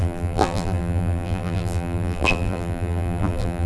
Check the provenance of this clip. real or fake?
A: fake